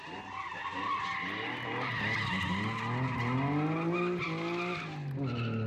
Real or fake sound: real